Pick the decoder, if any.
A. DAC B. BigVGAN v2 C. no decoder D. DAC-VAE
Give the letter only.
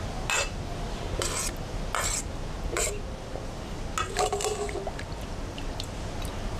C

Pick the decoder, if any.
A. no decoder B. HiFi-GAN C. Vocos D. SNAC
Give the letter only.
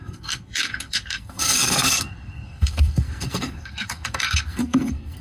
D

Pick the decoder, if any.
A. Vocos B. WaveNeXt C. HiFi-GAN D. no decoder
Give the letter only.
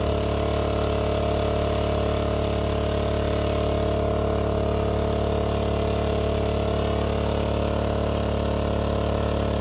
D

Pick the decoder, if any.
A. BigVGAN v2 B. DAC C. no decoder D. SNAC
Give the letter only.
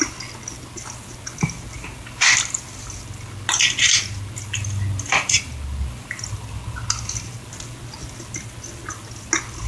C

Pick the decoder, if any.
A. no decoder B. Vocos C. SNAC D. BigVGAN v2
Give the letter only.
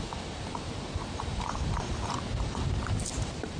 D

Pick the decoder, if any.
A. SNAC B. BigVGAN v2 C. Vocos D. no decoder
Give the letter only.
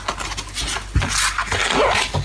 D